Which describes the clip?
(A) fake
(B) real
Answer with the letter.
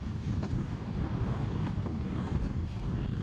A